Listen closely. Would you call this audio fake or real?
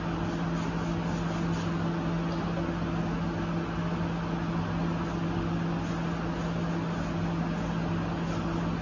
real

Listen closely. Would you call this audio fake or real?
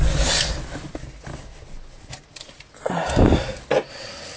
real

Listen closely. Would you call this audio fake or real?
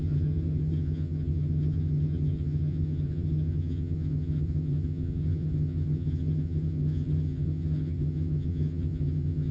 fake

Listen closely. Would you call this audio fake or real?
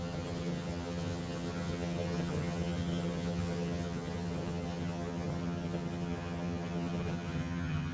fake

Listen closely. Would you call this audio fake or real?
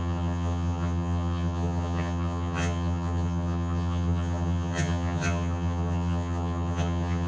fake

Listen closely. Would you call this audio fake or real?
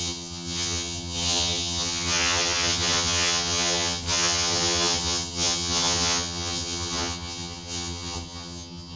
fake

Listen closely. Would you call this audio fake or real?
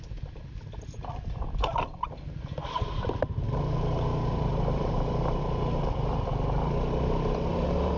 real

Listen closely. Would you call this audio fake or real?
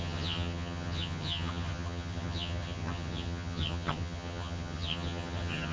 fake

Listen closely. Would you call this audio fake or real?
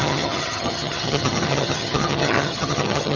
fake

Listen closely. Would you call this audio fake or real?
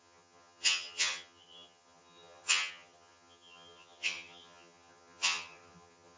fake